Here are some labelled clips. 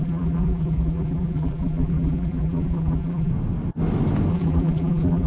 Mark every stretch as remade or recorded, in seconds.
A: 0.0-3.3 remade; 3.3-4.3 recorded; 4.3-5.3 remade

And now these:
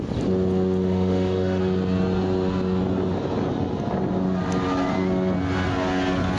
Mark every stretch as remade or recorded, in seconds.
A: 0.0-0.8 recorded; 0.8-1.6 remade; 1.6-6.4 recorded

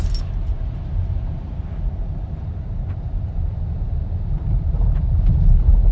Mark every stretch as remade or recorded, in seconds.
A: 0.0-0.5 recorded; 0.5-2.7 remade; 2.7-5.9 recorded

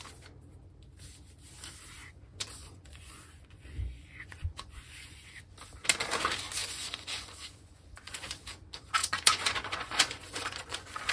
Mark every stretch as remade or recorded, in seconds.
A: 0.0-2.0 recorded; 2.0-5.5 remade; 5.5-6.6 recorded; 6.6-8.3 remade; 8.3-9.0 recorded; 9.0-11.1 remade

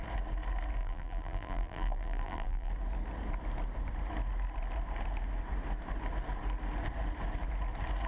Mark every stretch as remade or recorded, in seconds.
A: 0.0-0.8 recorded; 0.8-2.7 remade; 2.7-8.1 recorded

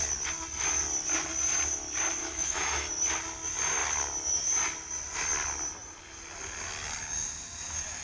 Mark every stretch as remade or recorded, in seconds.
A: 0.0-2.2 recorded; 2.2-2.9 remade; 2.9-8.0 recorded

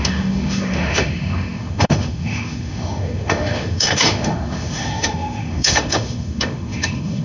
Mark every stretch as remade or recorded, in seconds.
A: 0.0-7.2 remade